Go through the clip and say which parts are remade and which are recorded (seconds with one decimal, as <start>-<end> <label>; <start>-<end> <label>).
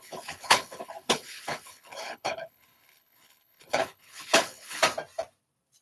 0.0-4.8 remade; 4.8-5.8 recorded